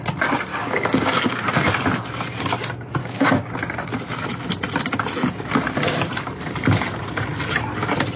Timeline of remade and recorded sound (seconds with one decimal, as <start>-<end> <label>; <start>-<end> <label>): 0.0-0.5 recorded; 0.5-1.2 remade; 1.2-3.0 recorded; 3.0-3.5 remade; 3.5-8.2 recorded